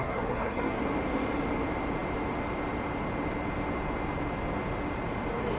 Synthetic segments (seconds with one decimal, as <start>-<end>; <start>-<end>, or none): 0.0-0.8